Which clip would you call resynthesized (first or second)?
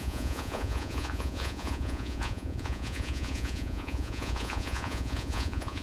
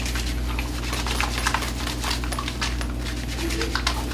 first